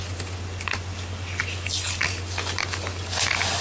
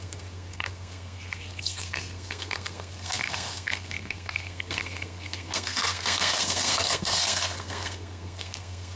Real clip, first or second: first